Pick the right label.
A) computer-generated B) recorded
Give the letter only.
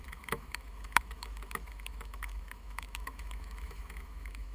A